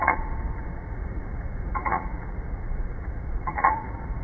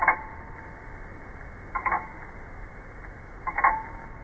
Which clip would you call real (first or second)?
second